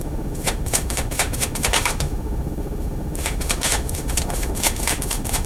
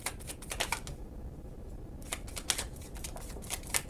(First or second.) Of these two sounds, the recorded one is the second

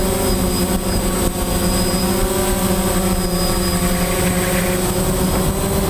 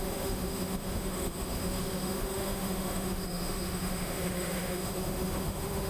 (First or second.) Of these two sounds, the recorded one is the first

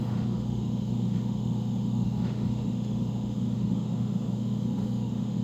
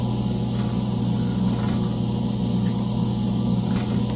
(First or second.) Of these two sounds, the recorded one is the second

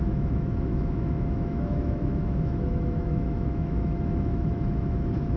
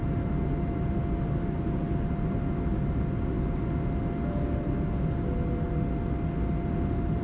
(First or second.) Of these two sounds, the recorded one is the second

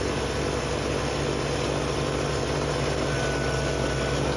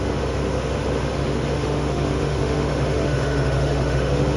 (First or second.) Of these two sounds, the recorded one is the first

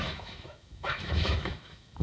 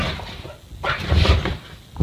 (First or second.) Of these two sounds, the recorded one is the second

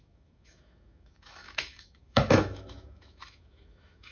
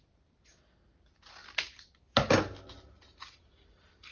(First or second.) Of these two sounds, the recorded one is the second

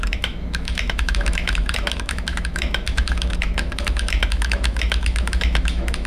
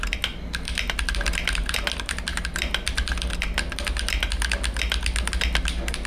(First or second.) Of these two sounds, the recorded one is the second